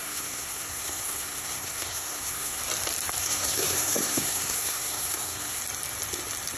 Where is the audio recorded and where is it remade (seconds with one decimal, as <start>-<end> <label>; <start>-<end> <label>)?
0.0-2.6 remade; 2.6-3.2 recorded; 3.2-5.6 remade; 5.6-6.6 recorded